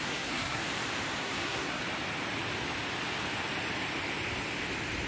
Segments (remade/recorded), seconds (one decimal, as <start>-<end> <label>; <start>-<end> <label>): 0.0-0.6 remade; 0.6-1.2 recorded; 1.2-1.8 remade; 1.8-5.1 recorded